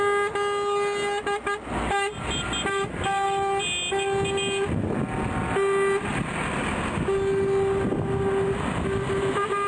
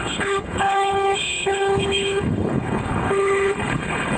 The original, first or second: first